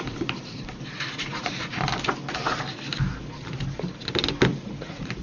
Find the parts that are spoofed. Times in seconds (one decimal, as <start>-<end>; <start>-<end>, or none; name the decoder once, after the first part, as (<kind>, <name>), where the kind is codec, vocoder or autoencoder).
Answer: 1.1-1.7 (vocoder, Vocos); 4.5-5.2